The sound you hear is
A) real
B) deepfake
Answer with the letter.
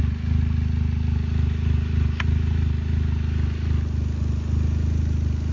A